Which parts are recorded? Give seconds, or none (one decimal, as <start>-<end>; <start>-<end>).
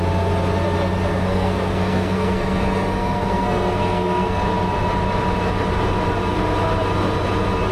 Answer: 0.0-1.1; 4.4-7.7